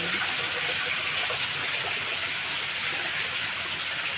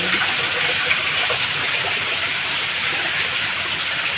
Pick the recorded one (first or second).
first